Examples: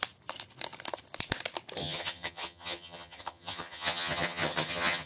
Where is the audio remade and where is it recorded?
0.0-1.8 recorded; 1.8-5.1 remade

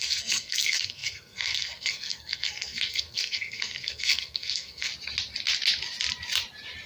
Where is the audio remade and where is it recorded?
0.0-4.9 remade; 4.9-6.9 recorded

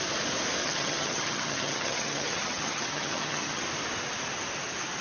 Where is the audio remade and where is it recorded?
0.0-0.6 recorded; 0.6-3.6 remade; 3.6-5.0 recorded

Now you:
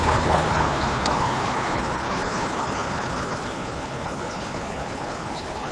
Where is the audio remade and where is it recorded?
0.0-5.7 remade

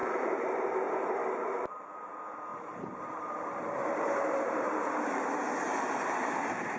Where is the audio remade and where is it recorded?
0.0-0.5 remade; 0.5-1.2 recorded; 1.2-2.1 remade; 2.1-2.5 recorded; 2.5-6.8 remade

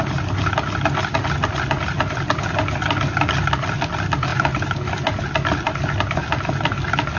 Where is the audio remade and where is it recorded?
0.0-7.2 recorded

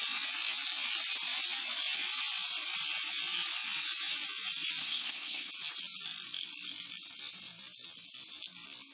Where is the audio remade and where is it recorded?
0.0-4.8 recorded; 4.8-5.5 remade; 5.5-8.9 recorded